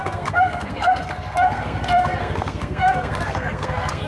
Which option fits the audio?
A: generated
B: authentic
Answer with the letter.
A